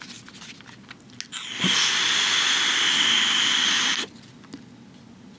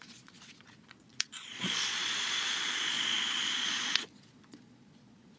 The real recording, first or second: first